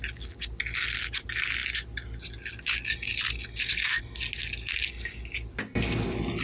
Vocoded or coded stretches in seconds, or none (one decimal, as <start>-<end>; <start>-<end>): none